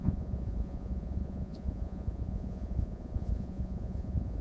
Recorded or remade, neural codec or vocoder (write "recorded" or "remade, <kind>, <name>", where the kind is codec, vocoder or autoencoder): remade, vocoder, Vocos